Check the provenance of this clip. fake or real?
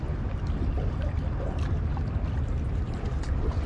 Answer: real